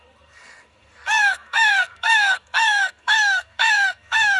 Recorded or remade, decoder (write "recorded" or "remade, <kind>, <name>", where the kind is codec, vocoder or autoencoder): remade, codec, SNAC